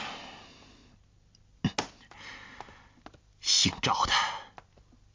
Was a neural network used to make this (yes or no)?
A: no